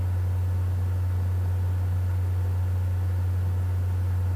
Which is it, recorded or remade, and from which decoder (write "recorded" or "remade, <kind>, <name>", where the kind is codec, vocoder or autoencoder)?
recorded